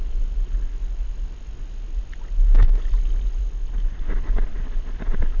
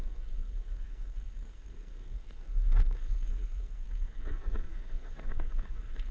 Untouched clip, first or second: first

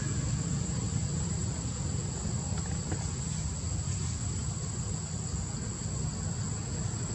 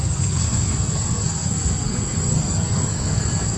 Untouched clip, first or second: first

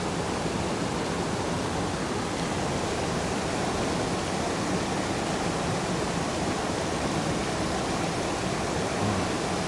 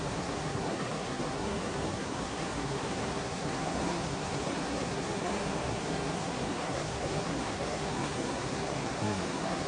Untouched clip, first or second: first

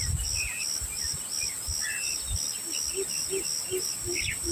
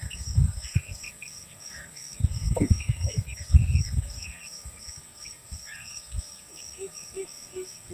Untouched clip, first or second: first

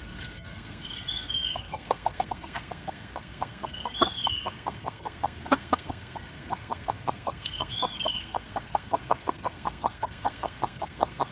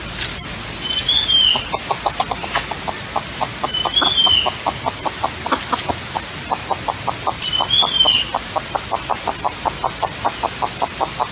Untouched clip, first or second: second